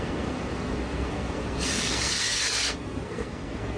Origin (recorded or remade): remade